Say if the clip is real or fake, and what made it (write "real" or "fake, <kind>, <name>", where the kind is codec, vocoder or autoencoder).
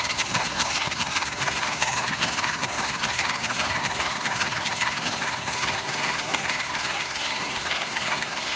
fake, codec, SNAC